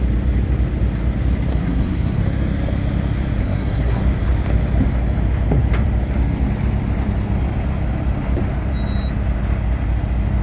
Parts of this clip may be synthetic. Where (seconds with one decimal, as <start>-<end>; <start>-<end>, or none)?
1.5-2.2; 3.4-4.0